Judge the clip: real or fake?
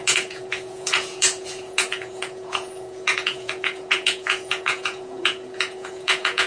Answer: fake